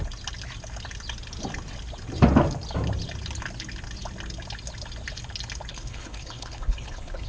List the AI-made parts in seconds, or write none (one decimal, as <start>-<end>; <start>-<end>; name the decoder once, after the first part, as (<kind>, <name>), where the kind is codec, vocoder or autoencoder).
5.7-7.3 (codec, HILCodec)